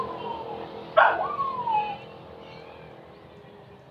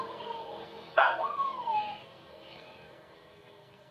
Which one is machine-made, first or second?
second